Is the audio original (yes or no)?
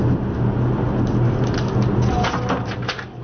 yes